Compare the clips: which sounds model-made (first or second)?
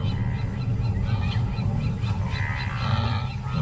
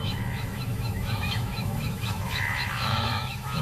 second